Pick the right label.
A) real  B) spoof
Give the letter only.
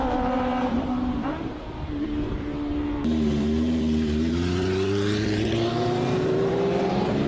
B